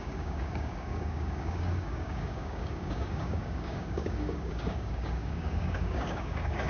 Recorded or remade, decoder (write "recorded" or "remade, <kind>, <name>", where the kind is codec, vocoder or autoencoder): remade, codec, DAC